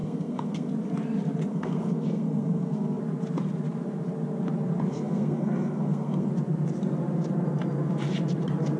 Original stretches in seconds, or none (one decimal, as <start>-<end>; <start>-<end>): 0.7-1.5; 3.0-4.9; 6.3-8.8